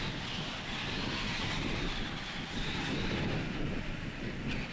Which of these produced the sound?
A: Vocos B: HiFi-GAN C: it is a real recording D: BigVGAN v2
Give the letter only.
C